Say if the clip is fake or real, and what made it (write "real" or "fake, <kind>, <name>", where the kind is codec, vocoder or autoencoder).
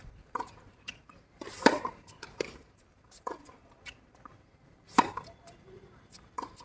fake, vocoder, BigVGAN v2